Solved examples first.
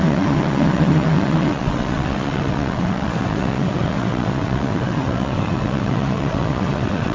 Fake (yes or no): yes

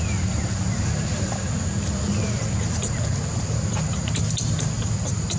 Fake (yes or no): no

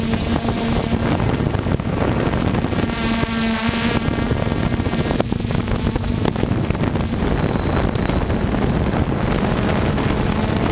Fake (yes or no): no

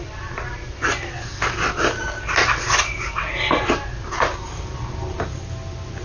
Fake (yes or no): no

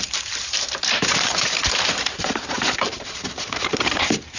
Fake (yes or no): yes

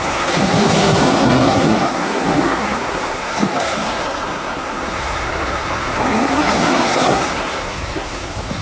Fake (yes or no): yes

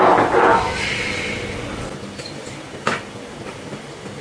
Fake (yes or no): no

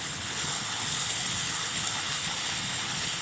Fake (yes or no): yes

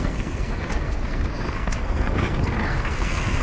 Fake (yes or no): yes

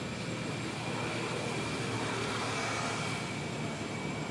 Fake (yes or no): no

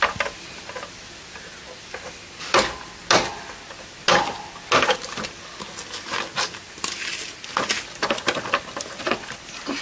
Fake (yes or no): no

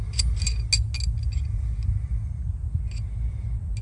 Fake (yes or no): no